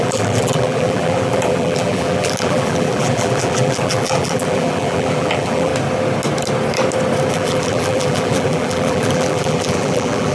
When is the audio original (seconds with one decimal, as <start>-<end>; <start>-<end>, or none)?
5.7-7.3